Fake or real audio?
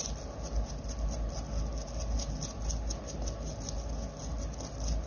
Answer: real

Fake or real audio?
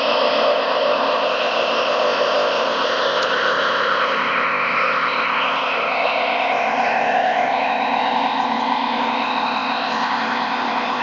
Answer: fake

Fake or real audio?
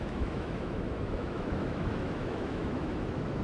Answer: fake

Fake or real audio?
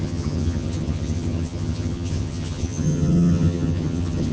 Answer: fake